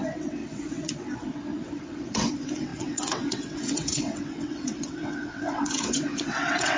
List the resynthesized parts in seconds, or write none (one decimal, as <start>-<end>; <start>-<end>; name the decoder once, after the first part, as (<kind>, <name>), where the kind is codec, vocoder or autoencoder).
0.0-6.8 (vocoder, WaveNeXt)